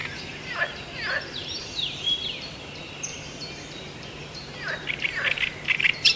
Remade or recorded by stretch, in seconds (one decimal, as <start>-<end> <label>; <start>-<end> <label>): 0.0-0.6 remade; 0.6-1.4 recorded; 1.4-5.1 remade; 5.1-6.2 recorded